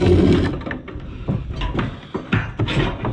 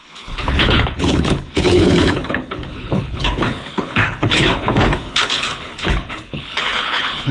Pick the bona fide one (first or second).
first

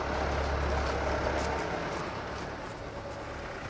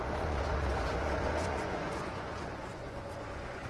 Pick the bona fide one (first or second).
first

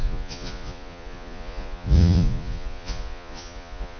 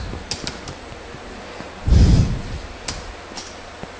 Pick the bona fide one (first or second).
second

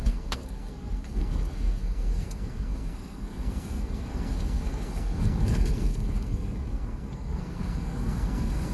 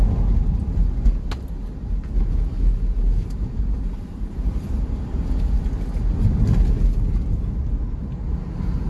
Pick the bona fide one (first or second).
second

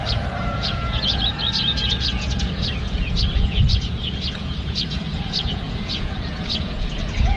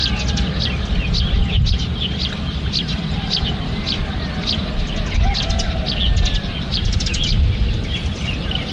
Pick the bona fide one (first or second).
second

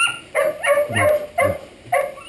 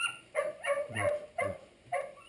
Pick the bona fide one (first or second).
first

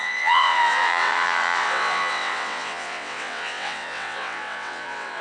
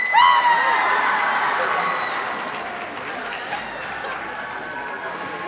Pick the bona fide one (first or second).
second